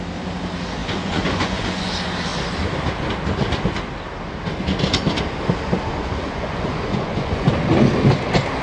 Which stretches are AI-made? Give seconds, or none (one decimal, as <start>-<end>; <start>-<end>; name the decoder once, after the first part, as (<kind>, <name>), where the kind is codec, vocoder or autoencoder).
0.8-1.9 (vocoder, Vocos); 5.9-7.5